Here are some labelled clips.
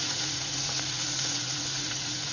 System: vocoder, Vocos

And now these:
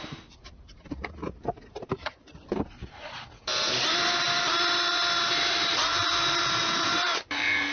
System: vocoder, BigVGAN v2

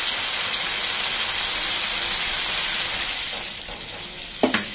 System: none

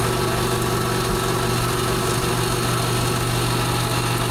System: none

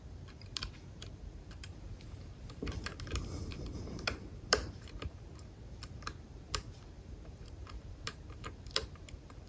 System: vocoder, BigVGAN v2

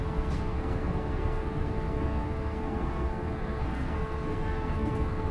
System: codec, SNAC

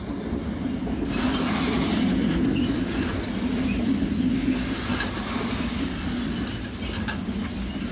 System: none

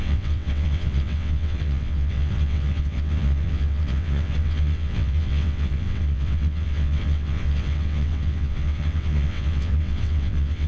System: vocoder, WaveNeXt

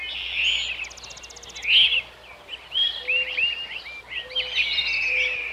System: none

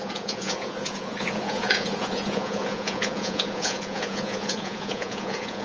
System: vocoder, Vocos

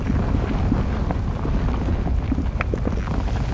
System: none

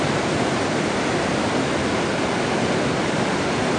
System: none